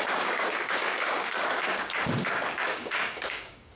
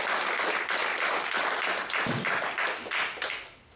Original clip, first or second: second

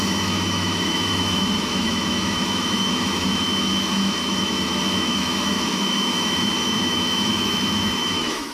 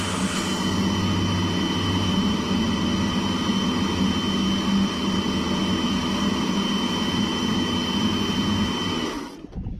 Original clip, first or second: second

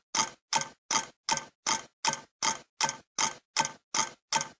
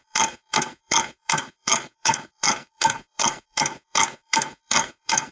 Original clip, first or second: first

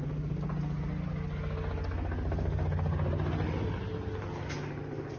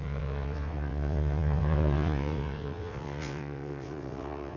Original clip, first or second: first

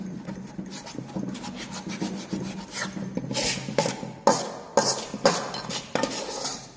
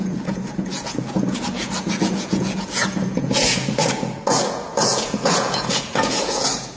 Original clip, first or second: first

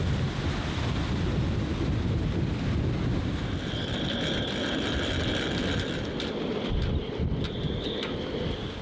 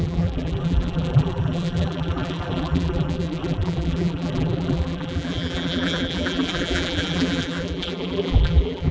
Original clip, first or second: first